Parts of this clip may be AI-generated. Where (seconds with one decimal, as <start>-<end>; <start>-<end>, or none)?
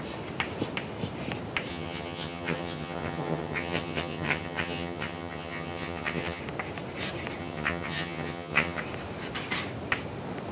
1.7-6.4; 7.4-8.8